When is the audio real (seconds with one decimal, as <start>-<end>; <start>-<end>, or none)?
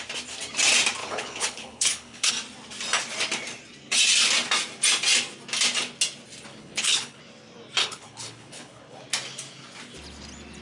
0.0-1.0; 2.3-6.5; 7.2-7.8; 9.0-10.6